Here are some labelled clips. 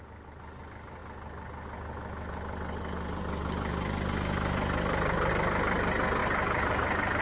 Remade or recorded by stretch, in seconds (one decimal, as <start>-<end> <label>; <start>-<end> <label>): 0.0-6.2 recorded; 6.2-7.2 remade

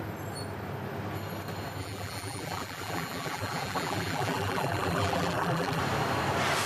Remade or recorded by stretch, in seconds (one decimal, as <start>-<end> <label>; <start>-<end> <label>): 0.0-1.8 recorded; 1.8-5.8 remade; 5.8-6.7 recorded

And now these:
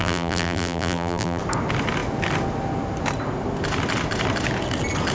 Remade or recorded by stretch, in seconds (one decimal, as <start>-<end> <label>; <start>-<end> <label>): 0.0-1.4 remade; 1.4-5.1 recorded